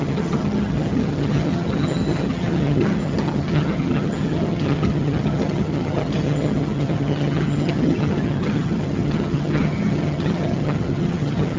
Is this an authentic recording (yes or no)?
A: no